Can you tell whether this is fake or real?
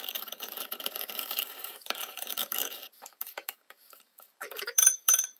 fake